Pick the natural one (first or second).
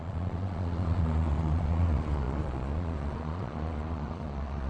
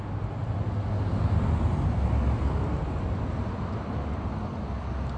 second